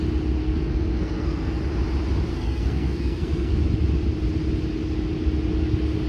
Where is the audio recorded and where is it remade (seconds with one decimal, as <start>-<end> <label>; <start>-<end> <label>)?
0.0-0.4 recorded; 0.4-1.6 remade; 1.6-2.3 recorded; 2.3-3.6 remade; 3.6-6.1 recorded